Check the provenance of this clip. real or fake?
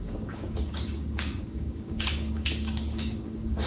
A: fake